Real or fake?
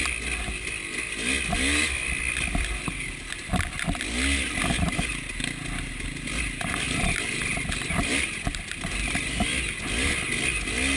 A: real